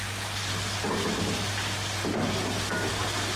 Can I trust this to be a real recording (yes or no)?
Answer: yes